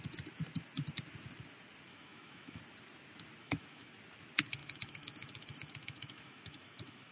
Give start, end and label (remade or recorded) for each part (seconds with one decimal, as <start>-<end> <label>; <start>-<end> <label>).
0.0-1.9 recorded; 1.9-2.6 remade; 2.6-3.4 recorded; 3.4-3.9 remade; 3.9-4.6 recorded; 4.6-7.1 remade